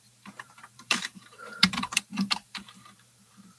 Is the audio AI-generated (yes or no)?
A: yes